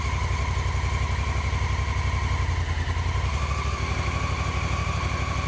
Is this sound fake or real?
real